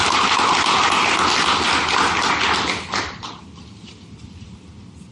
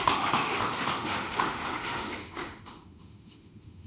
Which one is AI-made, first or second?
second